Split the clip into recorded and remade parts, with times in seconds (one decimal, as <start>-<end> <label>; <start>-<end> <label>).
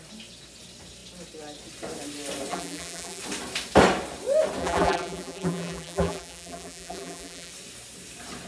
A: 0.0-2.5 recorded; 2.5-3.2 remade; 3.2-4.6 recorded; 4.6-7.5 remade; 7.5-8.5 recorded